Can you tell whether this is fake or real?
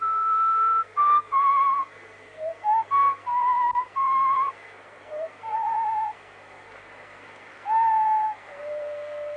fake